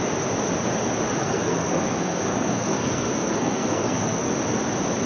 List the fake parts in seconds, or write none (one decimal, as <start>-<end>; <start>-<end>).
1.2-4.3